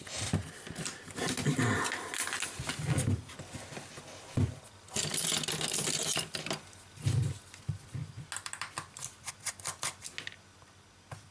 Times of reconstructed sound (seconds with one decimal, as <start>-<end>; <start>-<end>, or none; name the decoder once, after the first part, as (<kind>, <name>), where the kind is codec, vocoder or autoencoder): none